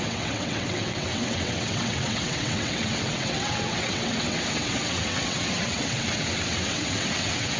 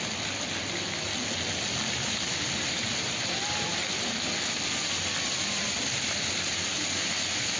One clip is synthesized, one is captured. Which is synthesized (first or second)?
first